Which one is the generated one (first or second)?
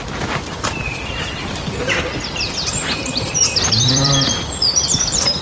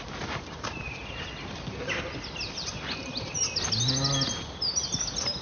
first